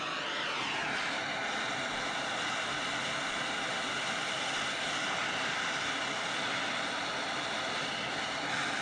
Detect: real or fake real